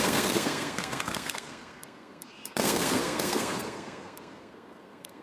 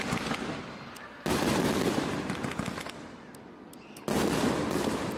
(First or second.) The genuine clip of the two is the second